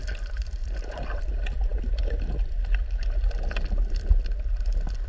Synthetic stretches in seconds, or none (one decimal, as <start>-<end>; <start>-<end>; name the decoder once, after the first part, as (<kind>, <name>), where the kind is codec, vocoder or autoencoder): 0.6-1.2 (vocoder, BigVGAN v2)